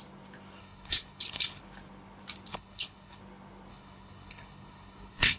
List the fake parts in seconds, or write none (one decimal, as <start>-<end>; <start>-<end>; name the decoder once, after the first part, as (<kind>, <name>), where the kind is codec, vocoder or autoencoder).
0.6-1.6 (codec, HILCodec); 2.5-3.2; 3.7-5.4